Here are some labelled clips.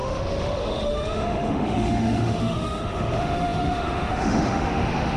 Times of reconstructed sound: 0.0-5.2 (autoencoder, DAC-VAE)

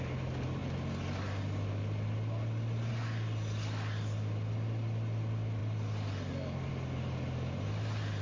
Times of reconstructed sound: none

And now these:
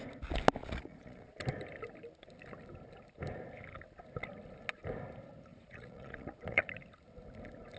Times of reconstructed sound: 0.6-1.3 (vocoder, Vocos); 5.5-6.6

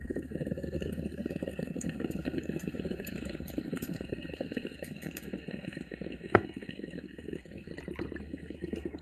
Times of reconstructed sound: 0.0-7.7 (codec, SNAC); 8.2-9.0

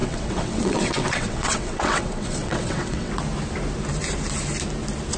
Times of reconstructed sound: 0.0-3.1 (vocoder, WaveNeXt)

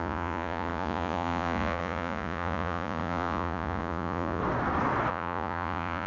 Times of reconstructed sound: 0.0-4.4 (vocoder, Vocos); 5.1-6.1